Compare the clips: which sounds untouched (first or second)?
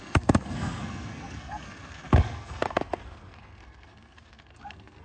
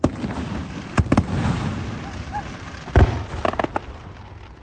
second